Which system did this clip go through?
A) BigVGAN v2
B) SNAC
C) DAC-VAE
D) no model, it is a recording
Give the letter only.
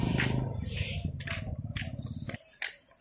D